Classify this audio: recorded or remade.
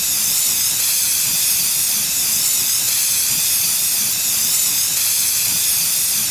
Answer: remade